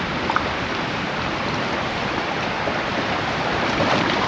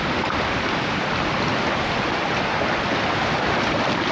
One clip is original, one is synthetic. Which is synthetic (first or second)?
first